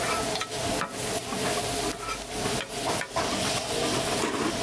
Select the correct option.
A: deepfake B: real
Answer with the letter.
B